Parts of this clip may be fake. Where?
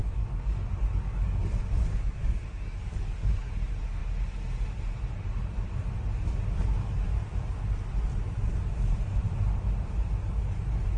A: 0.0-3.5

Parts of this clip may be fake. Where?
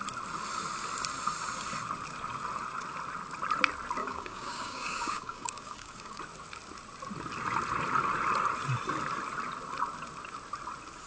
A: 4.0-6.2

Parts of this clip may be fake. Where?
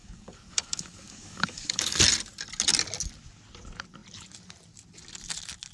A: 0.0-2.0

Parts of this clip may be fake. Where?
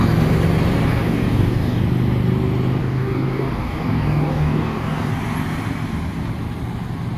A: 0.9-1.8; 2.8-5.1